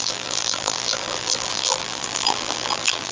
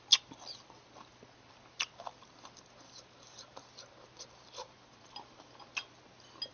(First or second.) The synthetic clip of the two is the first